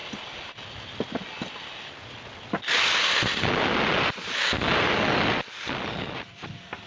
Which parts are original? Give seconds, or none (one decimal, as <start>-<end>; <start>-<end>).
0.0-6.9